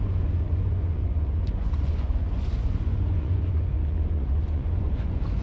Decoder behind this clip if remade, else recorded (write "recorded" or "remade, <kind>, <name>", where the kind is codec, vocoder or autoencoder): remade, vocoder, Vocos